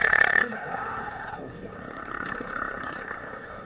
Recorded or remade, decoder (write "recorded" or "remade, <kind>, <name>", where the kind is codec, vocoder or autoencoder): remade, codec, SNAC